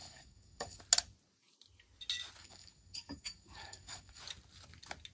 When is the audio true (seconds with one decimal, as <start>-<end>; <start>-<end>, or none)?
0.8-2.4; 4.2-5.1